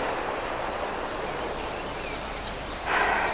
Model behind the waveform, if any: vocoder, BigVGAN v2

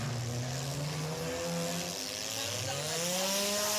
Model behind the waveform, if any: none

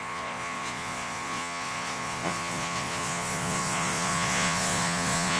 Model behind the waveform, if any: vocoder, Vocos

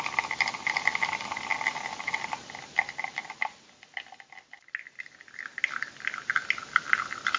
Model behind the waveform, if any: none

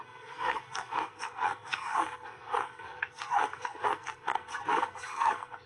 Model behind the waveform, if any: codec, SNAC